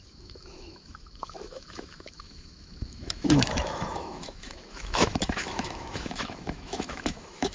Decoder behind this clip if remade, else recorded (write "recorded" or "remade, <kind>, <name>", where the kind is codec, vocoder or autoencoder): remade, autoencoder, DAC-VAE